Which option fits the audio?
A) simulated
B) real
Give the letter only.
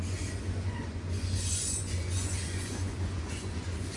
A